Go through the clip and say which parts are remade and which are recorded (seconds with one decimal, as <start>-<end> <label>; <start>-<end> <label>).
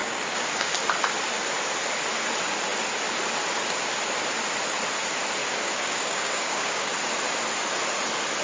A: 0.0-0.7 remade; 0.7-5.4 recorded; 5.4-6.9 remade; 6.9-8.4 recorded